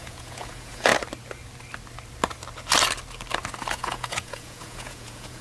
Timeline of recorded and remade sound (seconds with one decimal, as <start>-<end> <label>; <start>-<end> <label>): 0.0-0.9 remade; 0.9-3.7 recorded; 3.7-5.4 remade